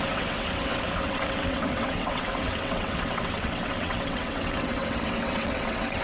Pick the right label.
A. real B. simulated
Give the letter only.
B